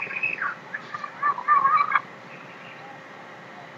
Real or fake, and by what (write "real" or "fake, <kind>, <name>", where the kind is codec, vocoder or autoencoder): real